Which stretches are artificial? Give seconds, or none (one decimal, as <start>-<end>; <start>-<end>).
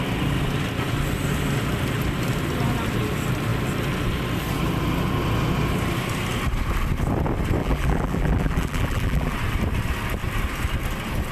7.6-9.3